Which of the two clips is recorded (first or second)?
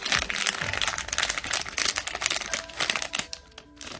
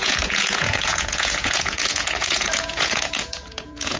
first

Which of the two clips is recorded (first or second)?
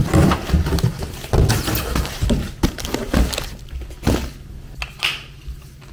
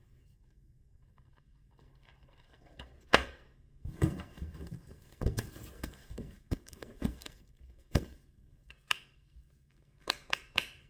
first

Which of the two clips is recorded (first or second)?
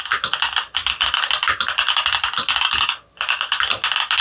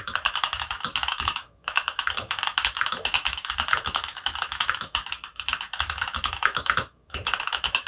first